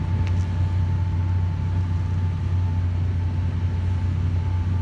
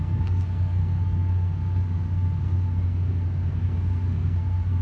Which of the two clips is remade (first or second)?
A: second